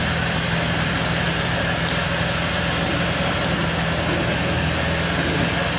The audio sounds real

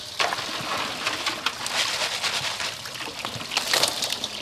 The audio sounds real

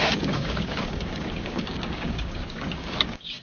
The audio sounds fake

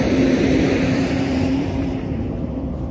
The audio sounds fake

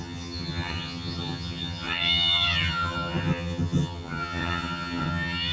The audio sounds fake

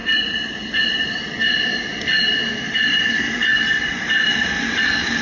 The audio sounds fake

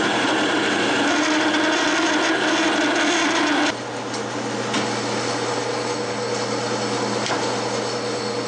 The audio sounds real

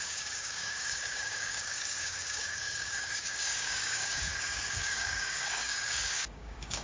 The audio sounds fake